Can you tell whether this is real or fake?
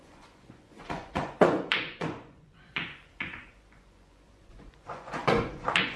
fake